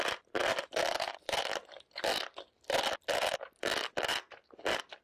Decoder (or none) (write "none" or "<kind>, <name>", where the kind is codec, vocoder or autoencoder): vocoder, BigVGAN v2